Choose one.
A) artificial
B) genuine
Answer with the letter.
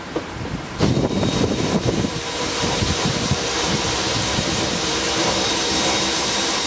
A